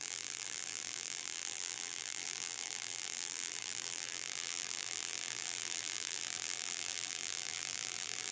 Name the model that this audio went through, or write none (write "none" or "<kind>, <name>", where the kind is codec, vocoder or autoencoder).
vocoder, BigVGAN v2